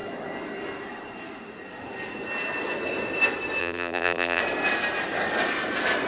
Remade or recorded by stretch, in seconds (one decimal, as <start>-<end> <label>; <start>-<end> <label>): 0.0-3.6 recorded; 3.6-4.4 remade; 4.4-6.1 recorded